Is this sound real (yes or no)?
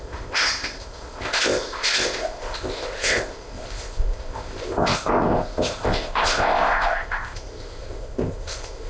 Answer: no